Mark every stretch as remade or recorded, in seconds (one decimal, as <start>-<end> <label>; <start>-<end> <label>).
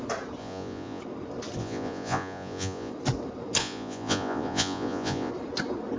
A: 0.0-0.4 recorded; 0.4-1.0 remade; 1.0-1.6 recorded; 1.6-2.9 remade; 2.9-3.6 recorded; 3.6-5.3 remade; 5.3-6.0 recorded